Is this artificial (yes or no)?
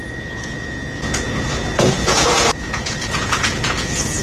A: yes